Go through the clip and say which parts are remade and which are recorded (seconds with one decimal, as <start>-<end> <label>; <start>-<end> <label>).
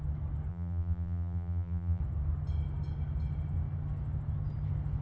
0.0-0.5 recorded; 0.5-2.0 remade; 2.0-5.0 recorded